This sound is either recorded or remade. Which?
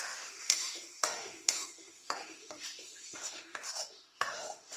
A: remade